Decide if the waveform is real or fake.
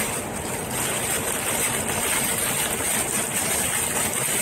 fake